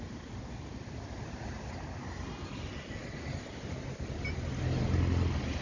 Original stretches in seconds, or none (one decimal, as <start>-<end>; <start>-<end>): 0.0-5.6